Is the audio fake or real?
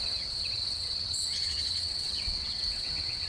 fake